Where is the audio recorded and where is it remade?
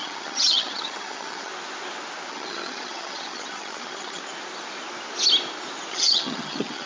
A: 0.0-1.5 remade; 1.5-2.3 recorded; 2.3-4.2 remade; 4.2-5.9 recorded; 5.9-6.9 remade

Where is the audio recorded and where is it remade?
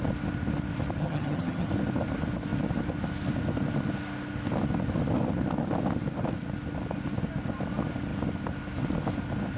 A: 0.0-1.0 recorded; 1.0-1.7 remade; 1.7-9.6 recorded